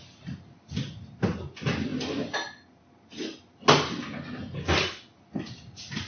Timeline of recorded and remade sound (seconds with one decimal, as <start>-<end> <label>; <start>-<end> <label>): 0.0-6.1 recorded